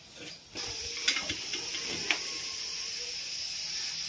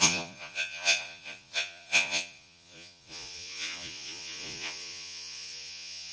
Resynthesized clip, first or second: second